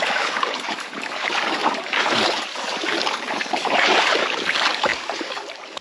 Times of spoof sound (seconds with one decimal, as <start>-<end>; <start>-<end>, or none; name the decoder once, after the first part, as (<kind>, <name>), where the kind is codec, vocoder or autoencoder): 0.0-5.8 (codec, DAC)